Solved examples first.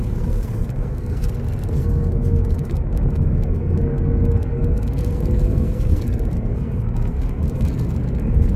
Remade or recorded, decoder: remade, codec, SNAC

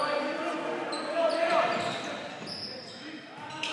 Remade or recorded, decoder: recorded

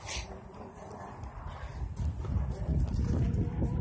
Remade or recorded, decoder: recorded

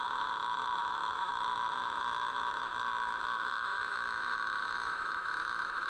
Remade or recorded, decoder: remade, autoencoder, DAC-VAE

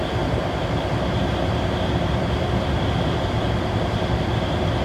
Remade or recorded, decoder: remade, vocoder, BigVGAN v2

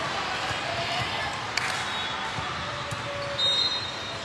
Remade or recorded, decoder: recorded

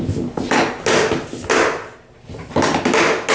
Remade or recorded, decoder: recorded